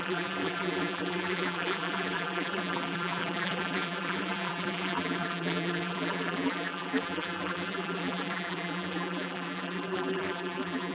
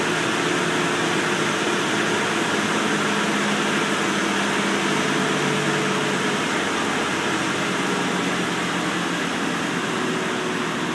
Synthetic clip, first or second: first